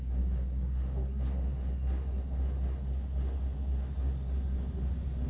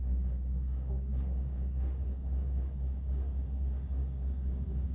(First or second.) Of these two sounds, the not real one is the second